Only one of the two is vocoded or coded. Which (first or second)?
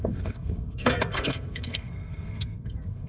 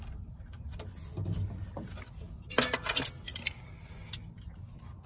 first